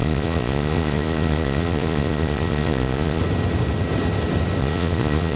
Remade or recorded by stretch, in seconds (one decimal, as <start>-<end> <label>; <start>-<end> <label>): 0.0-3.2 remade; 3.2-4.6 recorded; 4.6-5.4 remade

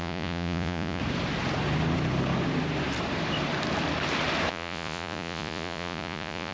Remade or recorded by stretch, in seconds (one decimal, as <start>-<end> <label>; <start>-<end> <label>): 0.0-1.0 remade; 1.0-4.5 recorded; 4.5-6.5 remade